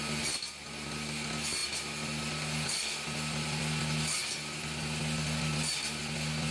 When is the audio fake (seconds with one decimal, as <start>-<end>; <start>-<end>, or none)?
none